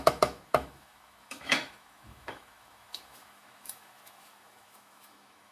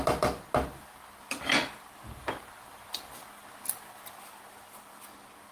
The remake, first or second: first